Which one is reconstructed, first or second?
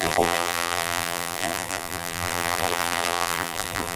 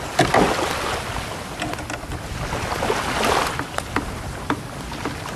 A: first